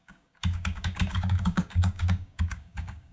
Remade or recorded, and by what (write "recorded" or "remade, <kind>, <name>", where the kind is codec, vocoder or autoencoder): remade, codec, DAC